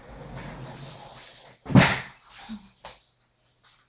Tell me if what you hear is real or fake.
real